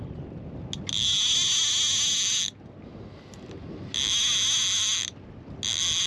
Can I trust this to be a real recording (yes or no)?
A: yes